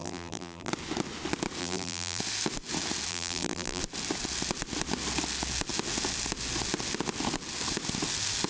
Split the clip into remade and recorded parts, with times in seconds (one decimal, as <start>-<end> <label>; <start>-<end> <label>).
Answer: 0.0-0.7 remade; 0.7-1.6 recorded; 1.6-2.2 remade; 2.2-3.1 recorded; 3.1-3.8 remade; 3.8-8.5 recorded